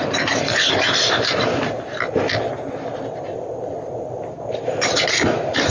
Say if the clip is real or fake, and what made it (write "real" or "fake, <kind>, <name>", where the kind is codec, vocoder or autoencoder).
real